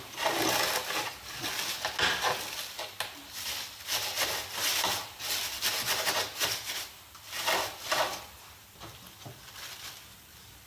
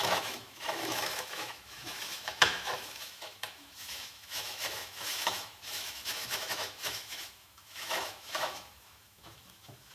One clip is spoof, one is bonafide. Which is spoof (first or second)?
second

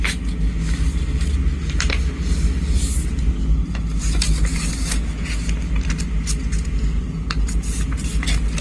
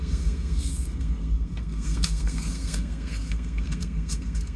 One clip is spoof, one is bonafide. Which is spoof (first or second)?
second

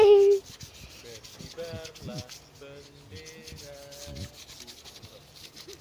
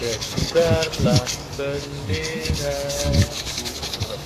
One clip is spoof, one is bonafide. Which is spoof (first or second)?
second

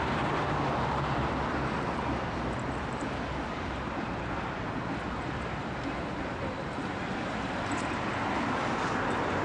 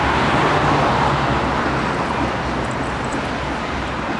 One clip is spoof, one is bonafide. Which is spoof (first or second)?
first